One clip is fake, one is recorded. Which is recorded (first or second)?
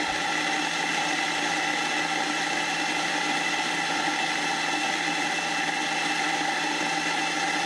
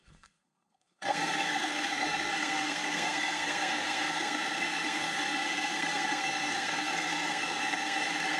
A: first